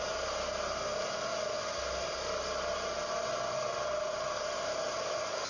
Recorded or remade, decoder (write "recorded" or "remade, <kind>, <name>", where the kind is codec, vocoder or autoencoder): recorded